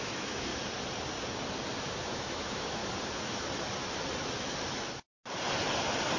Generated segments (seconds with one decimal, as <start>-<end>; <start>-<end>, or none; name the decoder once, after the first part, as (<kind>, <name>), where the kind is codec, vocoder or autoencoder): 0.0-0.5 (autoencoder, DAC-VAE); 1.8-2.8